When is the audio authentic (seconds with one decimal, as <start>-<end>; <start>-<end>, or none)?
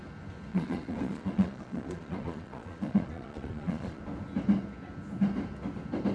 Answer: 0.0-0.5; 4.0-6.1